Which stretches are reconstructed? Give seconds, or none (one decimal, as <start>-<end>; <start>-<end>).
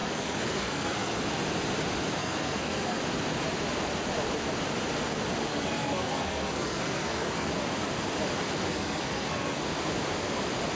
0.0-1.2; 2.2-3.0; 5.5-7.5; 8.7-9.6